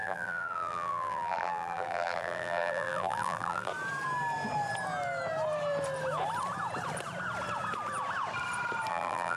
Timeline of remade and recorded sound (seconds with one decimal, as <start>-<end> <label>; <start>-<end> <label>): 0.0-3.7 remade; 3.7-8.9 recorded; 8.9-9.4 remade